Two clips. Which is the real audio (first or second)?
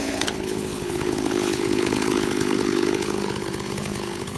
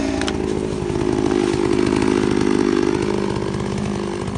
second